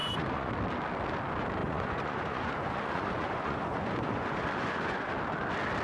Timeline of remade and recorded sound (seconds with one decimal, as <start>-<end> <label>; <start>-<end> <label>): 0.0-0.5 remade; 0.5-1.6 recorded; 1.6-5.1 remade; 5.1-5.8 recorded